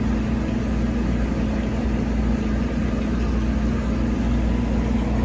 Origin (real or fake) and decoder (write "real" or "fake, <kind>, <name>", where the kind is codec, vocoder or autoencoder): real